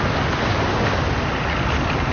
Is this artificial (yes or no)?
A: no